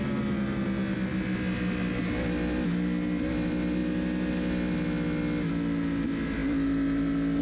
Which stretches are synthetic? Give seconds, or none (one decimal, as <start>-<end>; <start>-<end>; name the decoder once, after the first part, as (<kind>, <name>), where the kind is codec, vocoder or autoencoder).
none